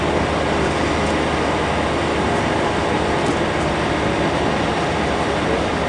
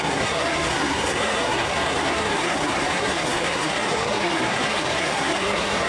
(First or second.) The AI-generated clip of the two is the second